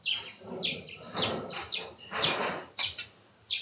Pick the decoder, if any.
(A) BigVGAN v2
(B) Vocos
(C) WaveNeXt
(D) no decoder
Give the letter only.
D